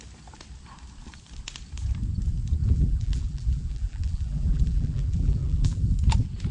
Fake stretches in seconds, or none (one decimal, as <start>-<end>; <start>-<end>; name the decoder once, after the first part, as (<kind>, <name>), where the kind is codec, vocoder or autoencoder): 2.6-5.9 (vocoder, BigVGAN v2)